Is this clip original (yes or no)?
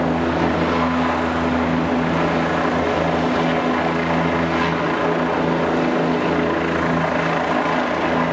yes